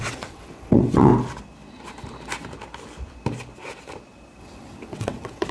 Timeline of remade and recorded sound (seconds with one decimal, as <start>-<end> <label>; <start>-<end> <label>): 0.0-1.1 remade; 1.1-4.4 recorded; 4.4-5.5 remade